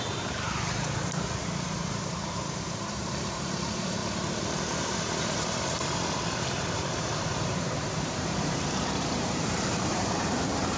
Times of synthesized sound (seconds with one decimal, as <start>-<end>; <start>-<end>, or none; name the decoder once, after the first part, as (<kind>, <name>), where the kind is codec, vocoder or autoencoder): 0.0-4.0 (vocoder, BigVGAN v2); 4.6-10.8

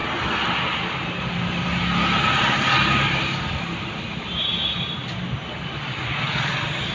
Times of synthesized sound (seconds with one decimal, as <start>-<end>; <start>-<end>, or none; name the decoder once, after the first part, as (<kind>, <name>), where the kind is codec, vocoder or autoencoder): none

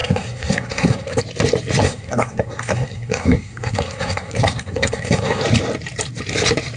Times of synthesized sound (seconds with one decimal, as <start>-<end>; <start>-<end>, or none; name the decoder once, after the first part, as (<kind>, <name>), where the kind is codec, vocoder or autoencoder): 0.0-1.2 (codec, SNAC); 1.8-5.4

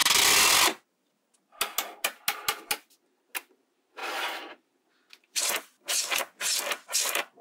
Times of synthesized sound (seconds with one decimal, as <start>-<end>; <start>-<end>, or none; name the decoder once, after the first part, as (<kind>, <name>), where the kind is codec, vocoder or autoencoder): none

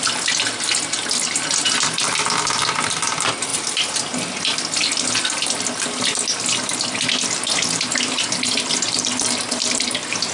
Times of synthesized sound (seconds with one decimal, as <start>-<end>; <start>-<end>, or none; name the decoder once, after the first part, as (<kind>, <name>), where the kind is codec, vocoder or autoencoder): none